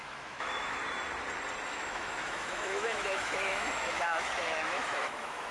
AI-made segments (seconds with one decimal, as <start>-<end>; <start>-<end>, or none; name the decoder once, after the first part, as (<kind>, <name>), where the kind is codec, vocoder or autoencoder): 0.0-0.8 (autoencoder, DAC-VAE); 1.7-5.5